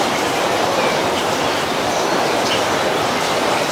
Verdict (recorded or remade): remade